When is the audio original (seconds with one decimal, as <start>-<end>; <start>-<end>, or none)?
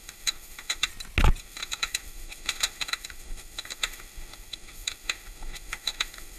0.9-1.4